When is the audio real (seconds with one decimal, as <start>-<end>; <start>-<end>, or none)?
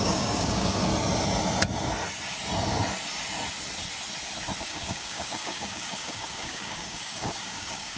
0.9-4.6